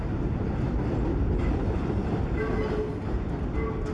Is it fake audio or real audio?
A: real